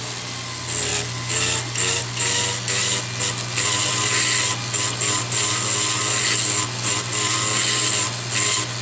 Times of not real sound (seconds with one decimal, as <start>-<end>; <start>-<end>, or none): none